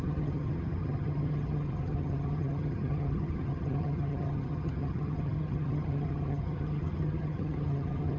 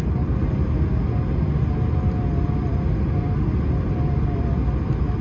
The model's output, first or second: first